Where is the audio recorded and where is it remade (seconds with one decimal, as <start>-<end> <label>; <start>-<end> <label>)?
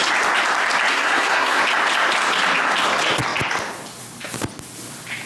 0.0-0.9 recorded; 0.9-1.6 remade; 1.6-5.3 recorded